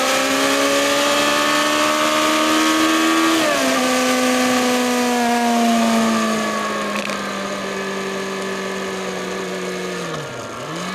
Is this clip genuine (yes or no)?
yes